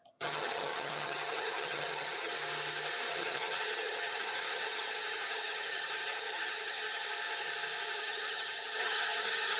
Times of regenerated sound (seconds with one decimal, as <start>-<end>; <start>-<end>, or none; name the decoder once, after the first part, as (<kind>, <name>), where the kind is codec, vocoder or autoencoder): 0.0-2.3 (vocoder, HiFi-GAN); 3.1-7.0; 8.0-9.6